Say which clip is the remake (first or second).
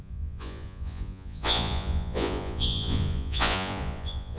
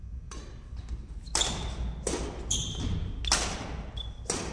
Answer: first